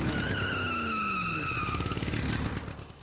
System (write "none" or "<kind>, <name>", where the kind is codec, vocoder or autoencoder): none